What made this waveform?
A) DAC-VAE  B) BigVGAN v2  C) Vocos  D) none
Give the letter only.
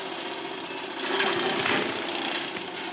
D